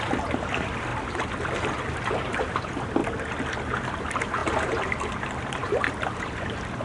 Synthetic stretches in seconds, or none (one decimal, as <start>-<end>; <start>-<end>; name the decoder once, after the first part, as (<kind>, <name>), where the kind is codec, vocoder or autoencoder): 0.0-0.9 (vocoder, BigVGAN v2); 2.3-3.0; 3.9-6.8